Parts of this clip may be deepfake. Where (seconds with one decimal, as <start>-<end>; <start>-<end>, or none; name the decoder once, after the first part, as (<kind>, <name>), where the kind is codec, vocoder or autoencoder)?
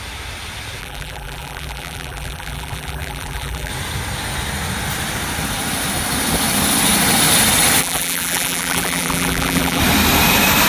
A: 0.8-3.7 (vocoder, BigVGAN v2); 7.8-9.8